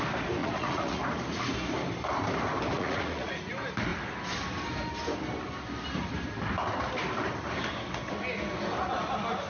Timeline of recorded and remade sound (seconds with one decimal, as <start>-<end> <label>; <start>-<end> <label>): 0.0-0.4 recorded; 0.4-1.0 remade; 1.0-2.7 recorded; 2.7-3.5 remade; 3.5-9.5 recorded